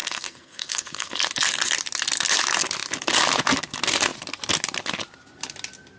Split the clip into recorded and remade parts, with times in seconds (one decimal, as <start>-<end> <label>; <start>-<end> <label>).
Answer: 0.0-1.2 remade; 1.2-6.0 recorded